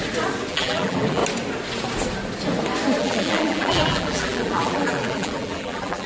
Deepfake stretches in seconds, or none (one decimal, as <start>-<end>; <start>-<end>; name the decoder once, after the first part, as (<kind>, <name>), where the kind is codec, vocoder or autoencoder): 0.5-1.2 (vocoder, BigVGAN v2); 3.0-6.1